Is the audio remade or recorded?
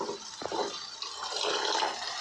recorded